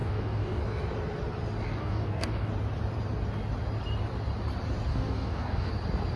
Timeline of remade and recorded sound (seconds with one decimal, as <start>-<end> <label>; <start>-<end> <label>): 0.0-0.6 remade; 0.6-1.8 recorded; 1.8-2.5 remade; 2.5-4.9 recorded; 4.9-5.7 remade; 5.7-6.2 recorded